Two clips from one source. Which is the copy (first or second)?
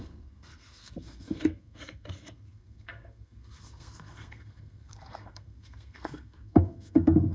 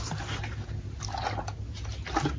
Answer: first